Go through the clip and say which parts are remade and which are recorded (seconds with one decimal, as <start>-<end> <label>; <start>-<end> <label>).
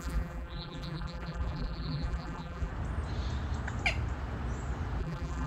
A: 0.0-2.7 remade; 2.7-5.0 recorded; 5.0-5.5 remade